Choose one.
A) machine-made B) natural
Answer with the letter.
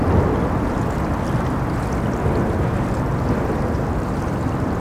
B